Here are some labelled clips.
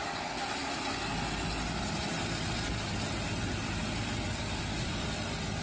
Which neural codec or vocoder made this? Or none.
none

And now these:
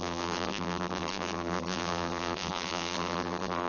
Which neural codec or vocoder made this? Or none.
vocoder, BigVGAN v2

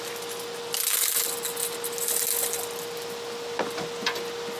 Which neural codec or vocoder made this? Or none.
none